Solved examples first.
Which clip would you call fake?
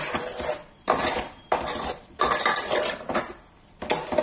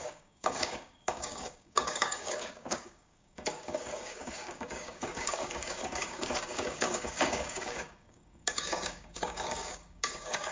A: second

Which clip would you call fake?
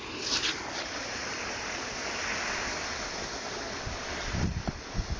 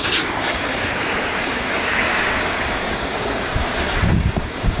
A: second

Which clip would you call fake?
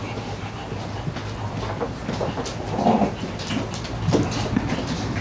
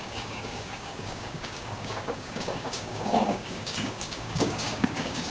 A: second